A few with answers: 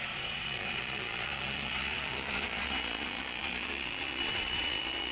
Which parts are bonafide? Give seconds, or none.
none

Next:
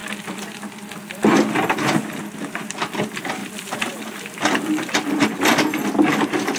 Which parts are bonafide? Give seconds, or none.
0.0-6.6

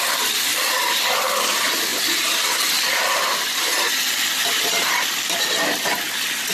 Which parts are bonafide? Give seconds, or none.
0.0-0.5; 1.3-1.9; 5.4-6.5

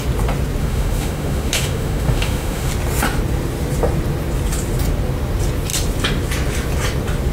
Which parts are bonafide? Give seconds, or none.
0.0-0.6; 2.7-7.3

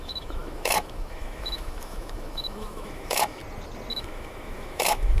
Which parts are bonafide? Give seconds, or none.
3.4-3.9

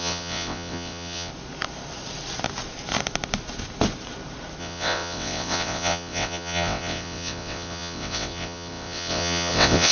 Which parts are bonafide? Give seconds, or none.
1.3-4.6

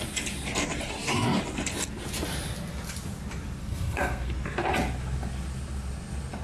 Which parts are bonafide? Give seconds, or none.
0.0-3.6; 4.3-6.4

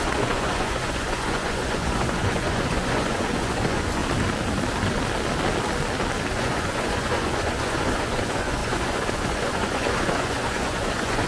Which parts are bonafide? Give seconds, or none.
4.0-6.3